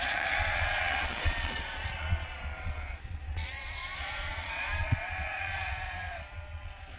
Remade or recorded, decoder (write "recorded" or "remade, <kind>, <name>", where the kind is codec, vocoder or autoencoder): remade, vocoder, Vocos